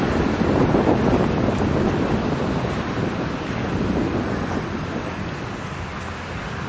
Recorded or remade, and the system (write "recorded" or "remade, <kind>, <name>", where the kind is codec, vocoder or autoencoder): recorded